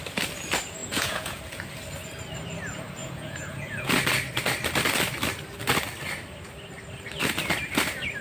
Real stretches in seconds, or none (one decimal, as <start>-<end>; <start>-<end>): 0.0-0.8; 1.4-3.0; 4.0-8.2